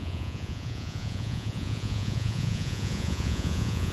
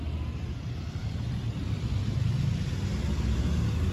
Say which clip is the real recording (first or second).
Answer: second